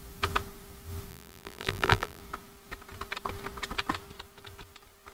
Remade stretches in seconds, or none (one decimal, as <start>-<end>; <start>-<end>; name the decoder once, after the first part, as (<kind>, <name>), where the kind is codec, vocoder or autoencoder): 1.1-2.2 (vocoder, BigVGAN v2)